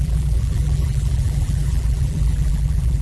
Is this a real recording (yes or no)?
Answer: no